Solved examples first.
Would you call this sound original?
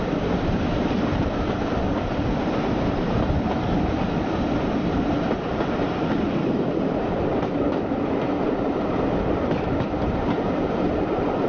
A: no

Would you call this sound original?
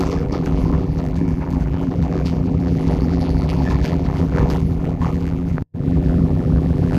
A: no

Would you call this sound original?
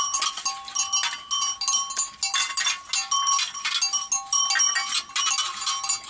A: yes